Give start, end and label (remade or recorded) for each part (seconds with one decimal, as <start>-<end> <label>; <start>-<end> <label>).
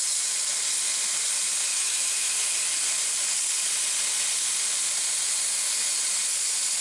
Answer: 0.0-1.7 recorded; 1.7-2.3 remade; 2.3-6.8 recorded